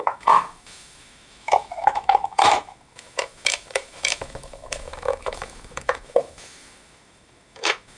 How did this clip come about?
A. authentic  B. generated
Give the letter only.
B